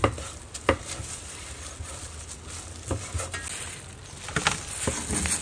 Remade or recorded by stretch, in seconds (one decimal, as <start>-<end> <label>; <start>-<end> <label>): 0.0-5.4 recorded